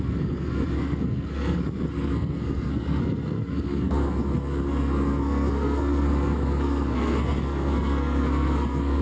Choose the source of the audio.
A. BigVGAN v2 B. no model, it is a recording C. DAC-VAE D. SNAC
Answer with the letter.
D